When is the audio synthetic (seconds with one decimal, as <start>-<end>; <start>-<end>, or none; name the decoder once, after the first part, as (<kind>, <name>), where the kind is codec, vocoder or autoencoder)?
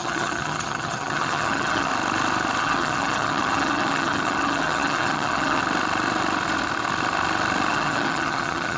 0.0-1.9 (vocoder, HiFi-GAN); 2.6-5.6; 7.7-8.8